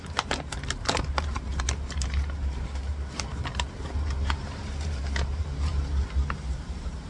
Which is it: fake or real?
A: fake